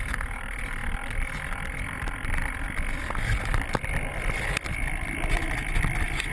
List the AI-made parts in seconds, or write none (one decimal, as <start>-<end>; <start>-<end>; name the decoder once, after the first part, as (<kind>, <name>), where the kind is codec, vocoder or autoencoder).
none